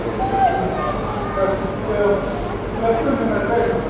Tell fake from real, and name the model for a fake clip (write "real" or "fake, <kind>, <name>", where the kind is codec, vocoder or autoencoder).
real